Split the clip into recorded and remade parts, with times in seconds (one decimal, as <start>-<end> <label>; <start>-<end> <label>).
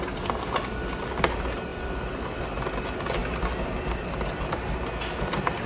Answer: 0.0-1.7 recorded; 1.7-2.4 remade; 2.4-5.7 recorded